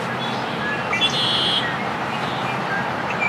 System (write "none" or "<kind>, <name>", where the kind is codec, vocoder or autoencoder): none